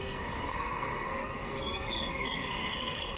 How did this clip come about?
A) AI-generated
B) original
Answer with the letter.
A